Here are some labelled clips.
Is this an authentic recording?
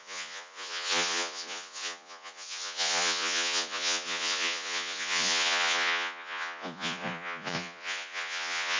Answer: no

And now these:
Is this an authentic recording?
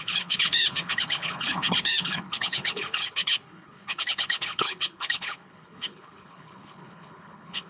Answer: no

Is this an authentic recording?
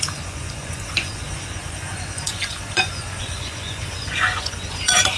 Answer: no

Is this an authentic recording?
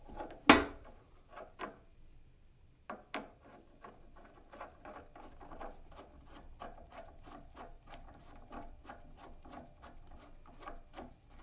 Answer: yes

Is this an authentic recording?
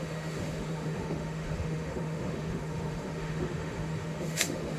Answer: no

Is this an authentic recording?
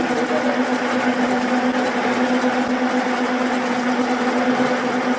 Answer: yes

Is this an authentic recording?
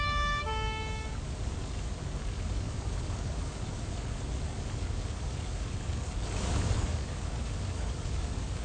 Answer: no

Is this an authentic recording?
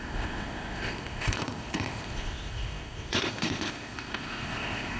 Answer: no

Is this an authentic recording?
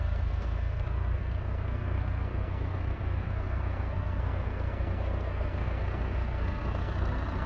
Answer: no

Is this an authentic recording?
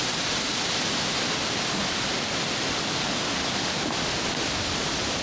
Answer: yes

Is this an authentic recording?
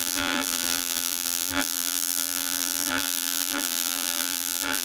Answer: no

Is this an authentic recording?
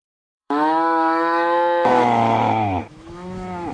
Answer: no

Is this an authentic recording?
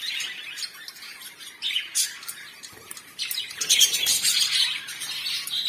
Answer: no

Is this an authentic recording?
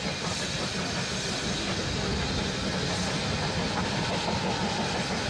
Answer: yes